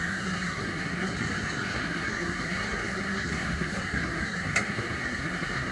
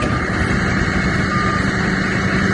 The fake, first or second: first